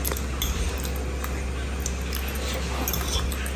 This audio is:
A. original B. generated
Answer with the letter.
A